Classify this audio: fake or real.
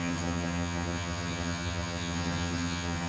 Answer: fake